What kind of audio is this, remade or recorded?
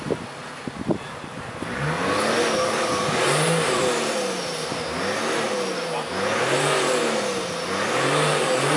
recorded